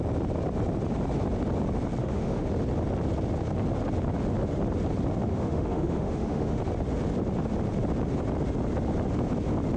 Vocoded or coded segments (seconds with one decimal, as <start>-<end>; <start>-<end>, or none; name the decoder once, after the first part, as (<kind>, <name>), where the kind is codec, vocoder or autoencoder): 2.0-2.5 (autoencoder, DAC-VAE); 5.3-6.6

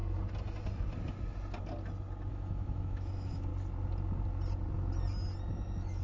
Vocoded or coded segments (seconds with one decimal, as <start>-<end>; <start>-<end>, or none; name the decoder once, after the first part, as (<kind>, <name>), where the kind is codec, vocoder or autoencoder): 2.3-3.5 (autoencoder, DAC-VAE); 5.5-6.0

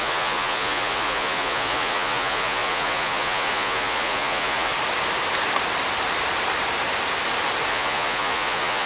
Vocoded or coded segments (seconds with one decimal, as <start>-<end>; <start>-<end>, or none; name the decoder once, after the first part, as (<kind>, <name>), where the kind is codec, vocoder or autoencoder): 0.0-4.7 (vocoder, Vocos); 7.7-8.9

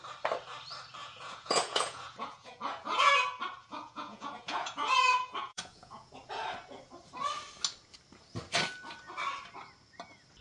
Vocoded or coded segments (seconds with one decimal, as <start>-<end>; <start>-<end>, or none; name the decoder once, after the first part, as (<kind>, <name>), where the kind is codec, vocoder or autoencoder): 1.0-3.1 (vocoder, Vocos); 3.6-6.1